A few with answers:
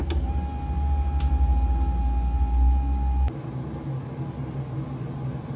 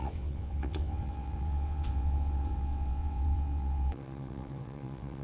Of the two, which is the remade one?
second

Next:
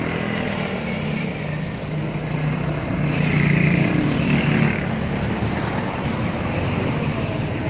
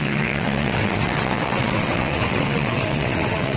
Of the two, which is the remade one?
second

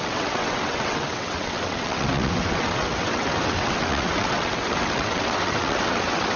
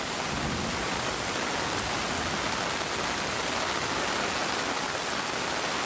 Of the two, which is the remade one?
first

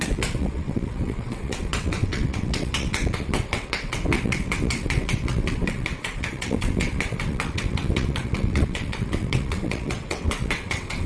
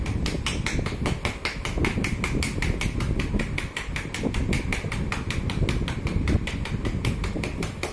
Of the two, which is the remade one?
first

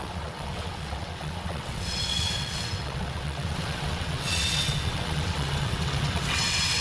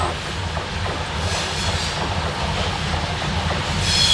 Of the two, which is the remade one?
first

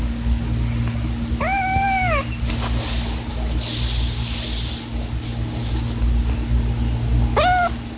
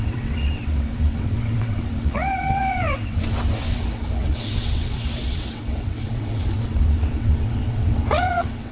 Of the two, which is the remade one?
second